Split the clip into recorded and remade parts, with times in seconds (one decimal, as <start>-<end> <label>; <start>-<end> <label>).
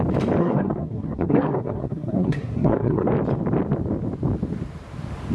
0.0-0.4 recorded; 0.4-3.1 remade; 3.1-5.3 recorded